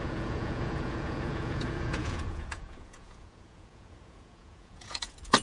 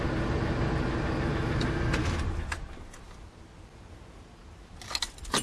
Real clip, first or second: second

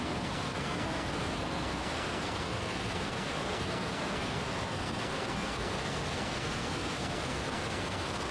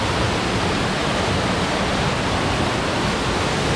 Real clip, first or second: second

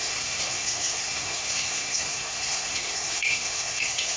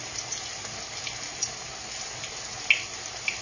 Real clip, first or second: second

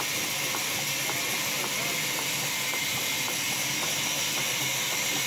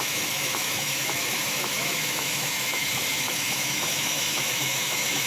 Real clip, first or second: first